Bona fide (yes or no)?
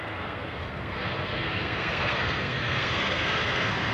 no